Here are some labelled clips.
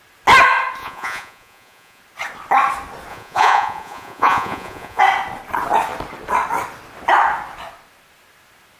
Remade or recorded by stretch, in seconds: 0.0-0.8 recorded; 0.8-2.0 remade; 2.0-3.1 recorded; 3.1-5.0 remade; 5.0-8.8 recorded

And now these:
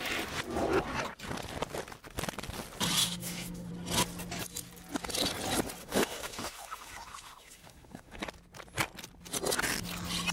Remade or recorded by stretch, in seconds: 0.0-3.0 recorded; 3.0-3.7 remade; 3.7-5.8 recorded; 5.8-8.2 remade; 8.2-10.3 recorded

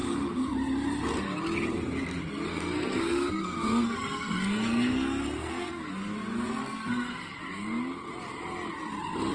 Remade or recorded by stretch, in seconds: 0.0-2.5 recorded; 2.5-5.9 remade; 5.9-6.6 recorded; 6.6-7.4 remade; 7.4-9.3 recorded